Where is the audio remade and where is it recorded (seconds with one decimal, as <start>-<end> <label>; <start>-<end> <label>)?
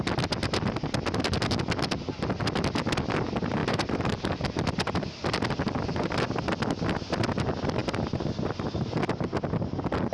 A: 0.0-3.6 recorded; 3.6-4.4 remade; 4.4-10.1 recorded